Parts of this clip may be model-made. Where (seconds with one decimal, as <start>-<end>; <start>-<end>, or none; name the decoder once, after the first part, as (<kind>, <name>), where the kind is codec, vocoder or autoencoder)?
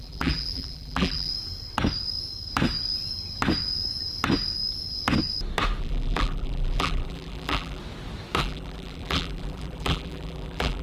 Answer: 0.0-1.3 (vocoder, BigVGAN v2); 5.8-7.8; 8.4-10.8